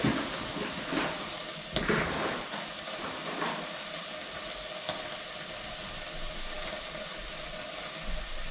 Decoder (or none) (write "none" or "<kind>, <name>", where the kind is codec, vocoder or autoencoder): none